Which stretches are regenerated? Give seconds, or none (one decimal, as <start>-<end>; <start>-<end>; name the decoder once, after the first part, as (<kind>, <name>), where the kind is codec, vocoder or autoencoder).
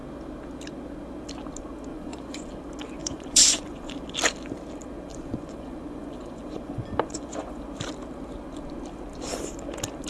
1.9-2.5 (vocoder, Vocos); 3.0-3.9; 5.1-7.6